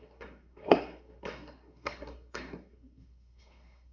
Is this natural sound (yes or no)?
no